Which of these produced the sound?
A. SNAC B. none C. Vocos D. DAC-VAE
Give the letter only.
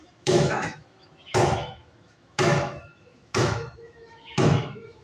D